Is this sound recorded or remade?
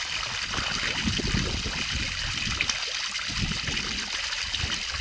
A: recorded